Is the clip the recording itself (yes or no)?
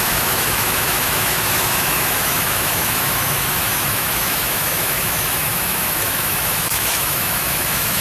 no